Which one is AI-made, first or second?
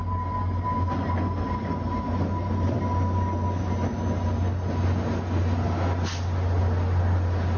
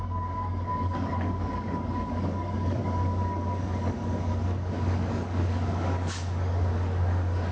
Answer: second